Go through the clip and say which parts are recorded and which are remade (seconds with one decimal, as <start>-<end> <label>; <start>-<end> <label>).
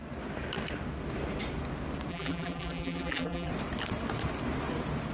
0.0-2.1 recorded; 2.1-3.5 remade; 3.5-5.1 recorded